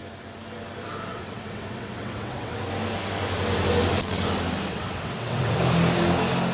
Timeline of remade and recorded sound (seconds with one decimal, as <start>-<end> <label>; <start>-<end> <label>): 0.0-1.1 recorded; 1.1-2.7 remade; 2.7-4.7 recorded; 4.7-5.6 remade; 5.6-6.5 recorded